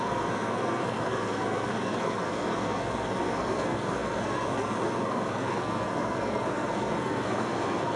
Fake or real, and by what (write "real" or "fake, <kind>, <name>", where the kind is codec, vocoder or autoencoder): fake, codec, SNAC